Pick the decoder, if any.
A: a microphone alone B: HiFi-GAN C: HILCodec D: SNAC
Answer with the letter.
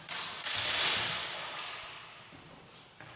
A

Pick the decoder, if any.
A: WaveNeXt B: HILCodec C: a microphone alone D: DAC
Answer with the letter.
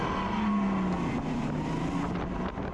C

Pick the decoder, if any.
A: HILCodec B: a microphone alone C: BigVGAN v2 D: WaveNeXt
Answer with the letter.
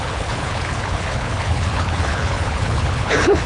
A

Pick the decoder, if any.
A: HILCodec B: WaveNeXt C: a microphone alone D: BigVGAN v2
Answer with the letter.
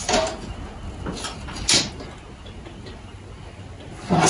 C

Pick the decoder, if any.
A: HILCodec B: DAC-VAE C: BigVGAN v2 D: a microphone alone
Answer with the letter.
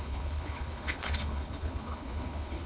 A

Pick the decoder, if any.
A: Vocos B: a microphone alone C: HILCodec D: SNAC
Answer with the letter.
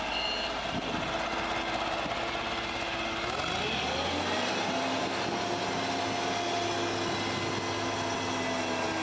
B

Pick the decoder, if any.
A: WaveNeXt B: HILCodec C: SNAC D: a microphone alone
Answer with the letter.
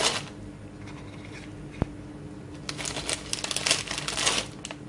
D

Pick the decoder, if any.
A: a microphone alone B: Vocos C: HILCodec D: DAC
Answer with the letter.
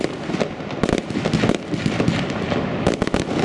A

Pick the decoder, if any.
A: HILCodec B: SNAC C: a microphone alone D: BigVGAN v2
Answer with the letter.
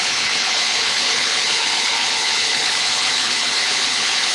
A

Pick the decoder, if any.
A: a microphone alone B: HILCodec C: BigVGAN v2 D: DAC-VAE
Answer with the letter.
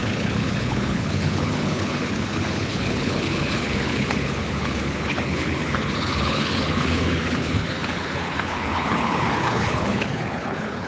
B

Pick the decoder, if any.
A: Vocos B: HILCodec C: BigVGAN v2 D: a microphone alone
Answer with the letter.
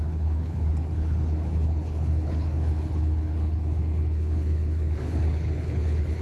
B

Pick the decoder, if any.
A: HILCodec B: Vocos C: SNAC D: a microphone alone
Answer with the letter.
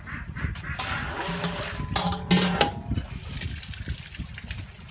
D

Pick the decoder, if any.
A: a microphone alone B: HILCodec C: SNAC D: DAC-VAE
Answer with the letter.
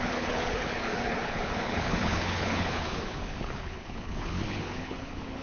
B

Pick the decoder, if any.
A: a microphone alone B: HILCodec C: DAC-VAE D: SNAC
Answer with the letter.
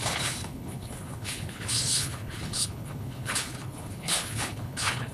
B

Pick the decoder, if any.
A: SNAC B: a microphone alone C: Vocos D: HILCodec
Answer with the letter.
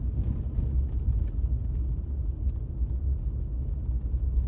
B